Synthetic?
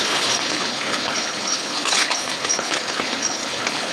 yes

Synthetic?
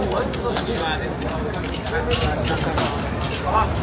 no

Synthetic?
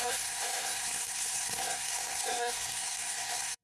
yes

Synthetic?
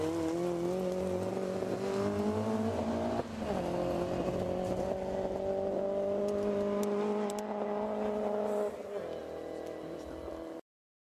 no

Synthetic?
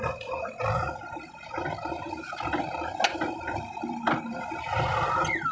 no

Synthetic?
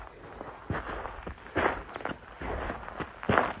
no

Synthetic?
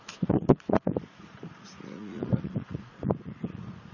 yes